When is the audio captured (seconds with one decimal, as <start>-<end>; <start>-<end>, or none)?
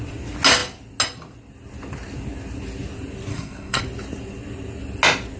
0.0-3.3; 3.8-5.4